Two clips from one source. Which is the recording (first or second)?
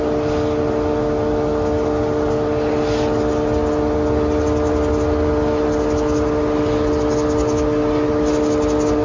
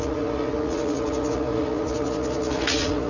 first